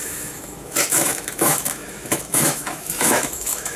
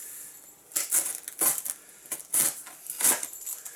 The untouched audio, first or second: second